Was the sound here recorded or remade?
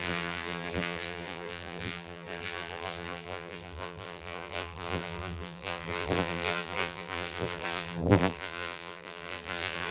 remade